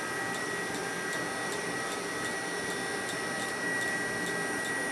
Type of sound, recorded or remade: recorded